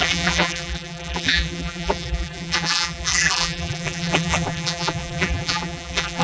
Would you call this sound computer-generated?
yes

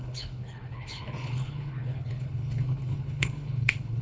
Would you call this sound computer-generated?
yes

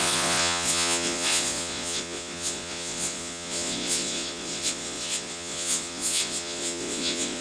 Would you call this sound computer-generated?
yes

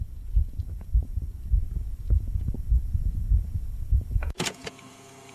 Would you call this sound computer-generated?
yes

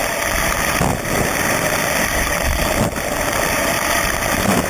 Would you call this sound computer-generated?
no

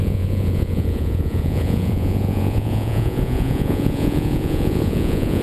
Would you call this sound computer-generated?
yes